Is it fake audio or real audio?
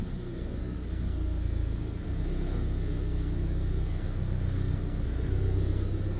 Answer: fake